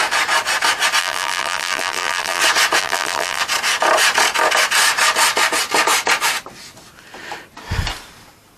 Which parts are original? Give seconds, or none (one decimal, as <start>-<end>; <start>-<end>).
0.0-1.0; 2.4-2.8; 3.4-8.6